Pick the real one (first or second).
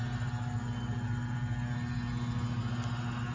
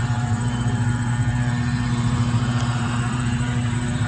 first